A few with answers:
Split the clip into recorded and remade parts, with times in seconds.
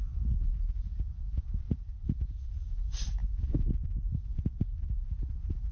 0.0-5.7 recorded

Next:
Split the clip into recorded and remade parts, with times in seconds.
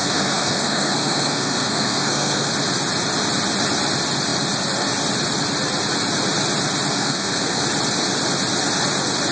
0.0-2.5 remade; 2.5-6.9 recorded; 6.9-7.6 remade; 7.6-9.3 recorded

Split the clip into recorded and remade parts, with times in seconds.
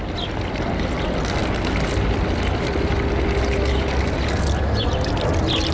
0.0-5.7 recorded